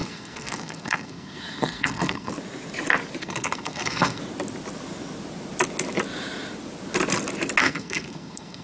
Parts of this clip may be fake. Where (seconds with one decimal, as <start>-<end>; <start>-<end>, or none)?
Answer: 0.0-2.3; 3.2-4.2; 7.6-8.6